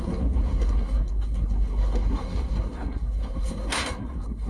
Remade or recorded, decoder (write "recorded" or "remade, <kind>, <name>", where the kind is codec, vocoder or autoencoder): remade, codec, SNAC